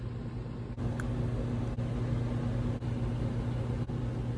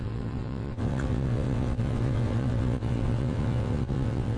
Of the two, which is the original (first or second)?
first